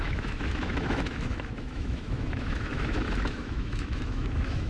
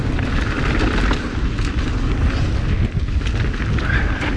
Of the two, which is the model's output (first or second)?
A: first